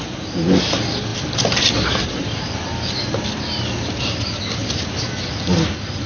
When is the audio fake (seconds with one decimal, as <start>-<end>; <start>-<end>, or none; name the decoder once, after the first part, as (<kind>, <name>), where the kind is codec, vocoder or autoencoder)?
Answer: none